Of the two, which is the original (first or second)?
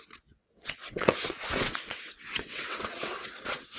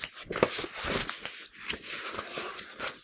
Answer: second